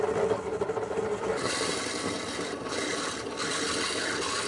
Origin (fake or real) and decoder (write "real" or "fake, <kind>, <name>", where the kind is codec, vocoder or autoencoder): real